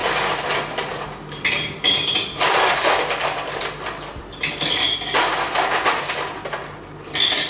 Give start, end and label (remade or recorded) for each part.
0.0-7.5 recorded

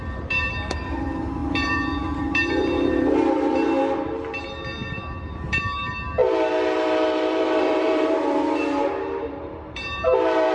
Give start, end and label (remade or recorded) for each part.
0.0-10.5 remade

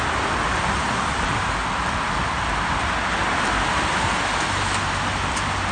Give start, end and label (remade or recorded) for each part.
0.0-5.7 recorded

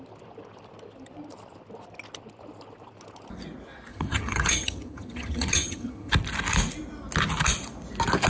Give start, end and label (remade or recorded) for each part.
0.0-3.9 recorded; 3.9-6.1 remade; 6.1-8.3 recorded

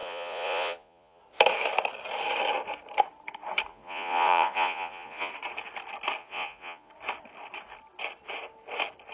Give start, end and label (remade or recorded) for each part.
0.0-1.2 remade; 1.2-3.7 recorded; 3.7-5.3 remade; 5.3-6.2 recorded; 6.2-6.9 remade; 6.9-9.1 recorded

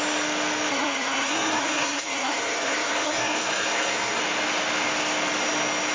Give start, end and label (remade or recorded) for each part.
0.0-0.7 recorded; 0.7-4.2 remade; 4.2-5.9 recorded